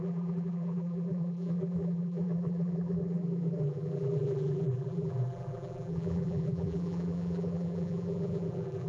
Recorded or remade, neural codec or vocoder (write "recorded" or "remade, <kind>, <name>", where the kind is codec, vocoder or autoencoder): remade, vocoder, BigVGAN v2